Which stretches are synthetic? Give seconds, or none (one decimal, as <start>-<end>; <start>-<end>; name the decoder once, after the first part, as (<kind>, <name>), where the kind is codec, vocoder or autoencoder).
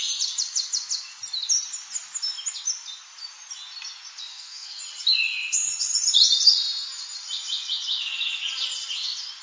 4.3-4.8 (codec, SNAC)